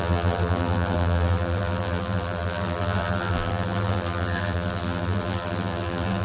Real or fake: fake